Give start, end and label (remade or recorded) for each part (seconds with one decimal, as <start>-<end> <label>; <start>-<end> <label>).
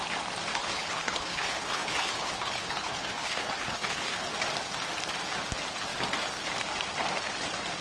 0.0-0.5 recorded; 0.5-4.3 remade; 4.3-7.8 recorded